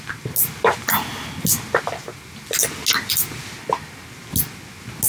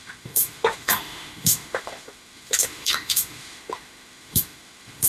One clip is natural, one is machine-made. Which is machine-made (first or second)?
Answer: second